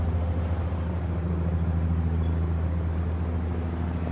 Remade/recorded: recorded